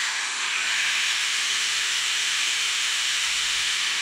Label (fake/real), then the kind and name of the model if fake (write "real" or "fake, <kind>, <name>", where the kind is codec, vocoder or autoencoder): fake, autoencoder, DAC-VAE